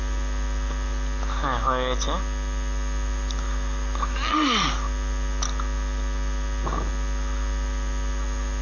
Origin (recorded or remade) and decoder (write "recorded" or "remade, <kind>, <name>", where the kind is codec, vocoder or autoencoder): recorded